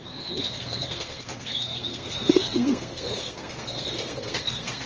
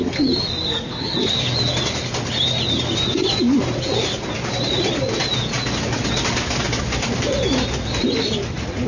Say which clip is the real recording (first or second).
second